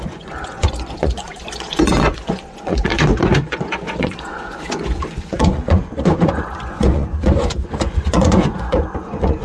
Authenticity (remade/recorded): remade